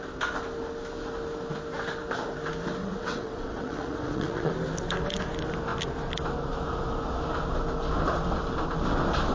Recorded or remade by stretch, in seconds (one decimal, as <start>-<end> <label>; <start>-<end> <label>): 0.0-2.8 recorded; 2.8-4.5 remade; 4.5-9.3 recorded